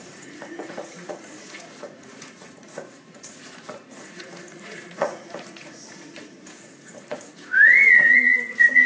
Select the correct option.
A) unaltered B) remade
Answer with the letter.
B